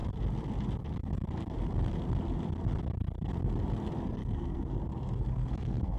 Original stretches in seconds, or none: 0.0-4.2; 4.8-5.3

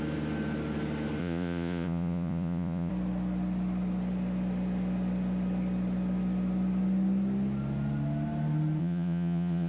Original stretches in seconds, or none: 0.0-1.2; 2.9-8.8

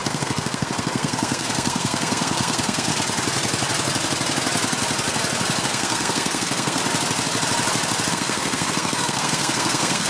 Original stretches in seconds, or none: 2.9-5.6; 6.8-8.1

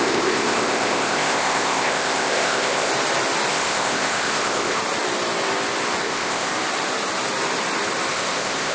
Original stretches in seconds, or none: 2.9-3.5; 4.8-6.0; 6.5-8.1

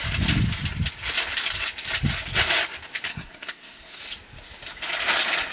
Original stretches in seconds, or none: 0.0-3.1; 4.0-5.5

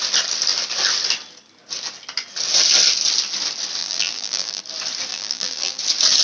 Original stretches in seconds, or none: 0.0-3.8; 4.6-5.1; 5.8-6.2

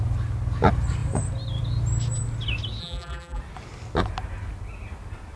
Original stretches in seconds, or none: 0.0-2.8; 3.4-5.4

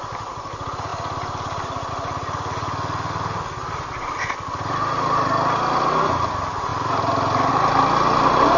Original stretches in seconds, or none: 0.0-8.6